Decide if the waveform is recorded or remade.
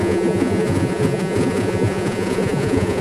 remade